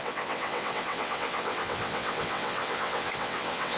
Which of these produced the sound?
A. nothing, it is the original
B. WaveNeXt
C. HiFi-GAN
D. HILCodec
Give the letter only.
B